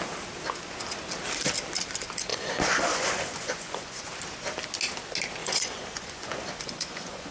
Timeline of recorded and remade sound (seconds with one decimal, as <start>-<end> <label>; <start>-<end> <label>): 0.0-2.3 recorded; 2.3-4.1 remade; 4.1-5.4 recorded; 5.4-7.3 remade